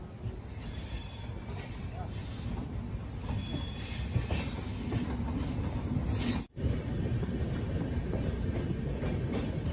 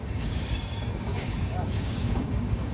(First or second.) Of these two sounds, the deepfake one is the second